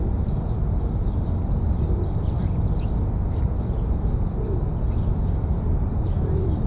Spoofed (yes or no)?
no